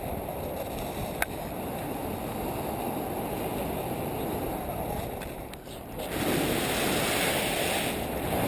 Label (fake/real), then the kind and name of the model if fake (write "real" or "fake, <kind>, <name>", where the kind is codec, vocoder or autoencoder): real